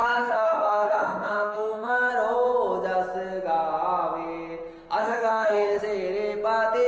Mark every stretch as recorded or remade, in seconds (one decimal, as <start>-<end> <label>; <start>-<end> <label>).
0.0-2.1 remade; 2.1-5.0 recorded; 5.0-5.8 remade; 5.8-6.9 recorded